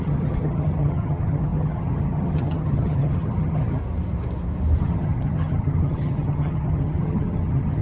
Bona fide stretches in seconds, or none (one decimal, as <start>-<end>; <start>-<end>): 3.8-4.8